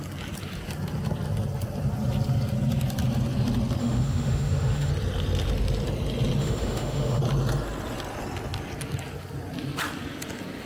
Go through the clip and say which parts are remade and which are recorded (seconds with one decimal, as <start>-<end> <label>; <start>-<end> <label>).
0.0-3.8 recorded; 3.8-4.9 remade; 4.9-6.4 recorded; 6.4-7.2 remade; 7.2-10.7 recorded